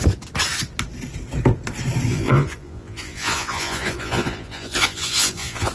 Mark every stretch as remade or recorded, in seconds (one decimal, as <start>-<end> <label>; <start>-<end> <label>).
0.0-2.1 recorded; 2.1-5.7 remade